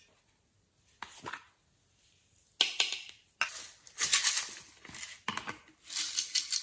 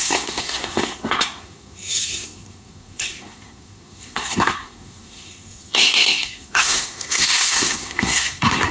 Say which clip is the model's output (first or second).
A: second